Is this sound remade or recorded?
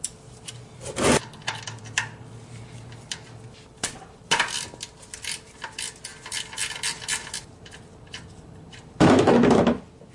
recorded